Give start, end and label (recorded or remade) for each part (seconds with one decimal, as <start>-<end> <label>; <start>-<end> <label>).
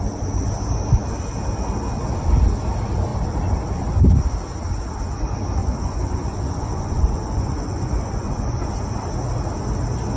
0.0-5.6 recorded; 5.6-8.6 remade; 8.6-10.2 recorded